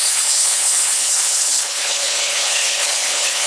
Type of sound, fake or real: fake